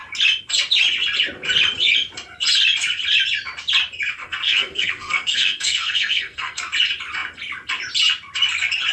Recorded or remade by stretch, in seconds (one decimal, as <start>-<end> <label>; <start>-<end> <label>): 0.0-4.1 recorded; 4.1-6.6 remade; 6.6-8.9 recorded